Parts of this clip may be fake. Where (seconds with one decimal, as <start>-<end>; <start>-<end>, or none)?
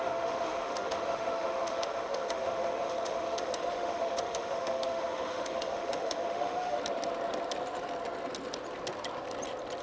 0.0-6.8